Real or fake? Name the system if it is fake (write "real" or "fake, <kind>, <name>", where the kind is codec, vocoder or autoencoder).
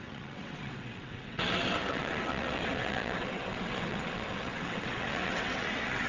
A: fake, vocoder, WaveNeXt